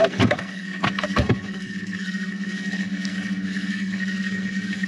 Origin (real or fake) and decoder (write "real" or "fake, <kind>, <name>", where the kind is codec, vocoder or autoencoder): fake, codec, SNAC